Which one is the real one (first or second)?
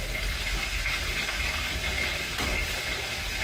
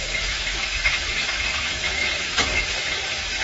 first